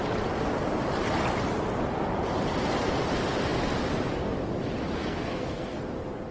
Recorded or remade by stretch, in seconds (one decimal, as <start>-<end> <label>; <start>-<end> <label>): 0.0-5.0 recorded; 5.0-5.8 remade; 5.8-6.3 recorded